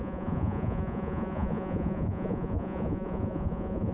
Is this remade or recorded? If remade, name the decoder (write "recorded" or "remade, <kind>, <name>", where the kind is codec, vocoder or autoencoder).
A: remade, vocoder, Vocos